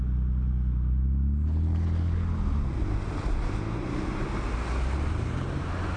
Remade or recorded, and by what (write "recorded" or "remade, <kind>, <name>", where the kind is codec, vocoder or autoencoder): recorded